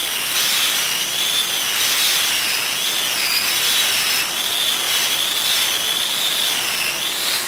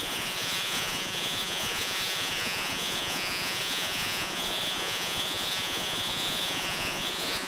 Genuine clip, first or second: first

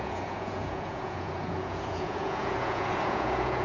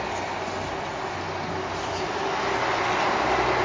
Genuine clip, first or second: second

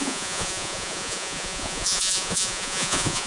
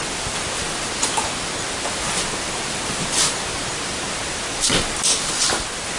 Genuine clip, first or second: second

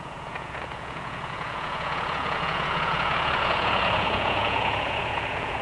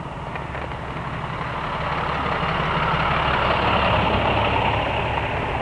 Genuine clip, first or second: second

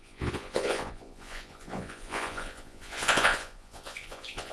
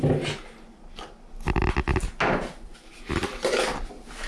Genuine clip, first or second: second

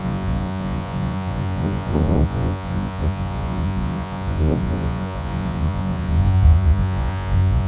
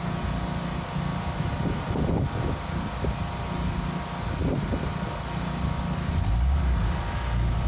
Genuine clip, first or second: second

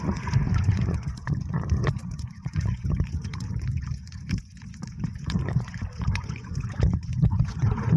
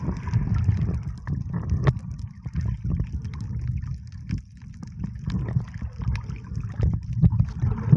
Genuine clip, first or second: second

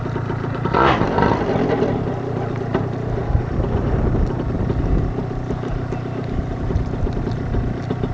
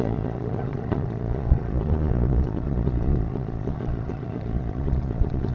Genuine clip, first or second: first